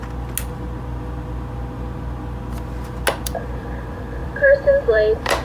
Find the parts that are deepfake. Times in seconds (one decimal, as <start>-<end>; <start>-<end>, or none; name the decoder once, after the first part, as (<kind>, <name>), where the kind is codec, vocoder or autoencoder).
3.2-5.4 (vocoder, BigVGAN v2)